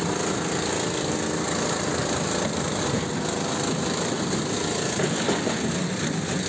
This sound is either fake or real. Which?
real